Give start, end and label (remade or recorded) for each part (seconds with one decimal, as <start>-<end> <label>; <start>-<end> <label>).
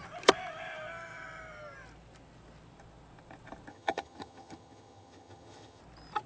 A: 0.0-3.7 recorded; 3.7-5.8 remade; 5.8-6.3 recorded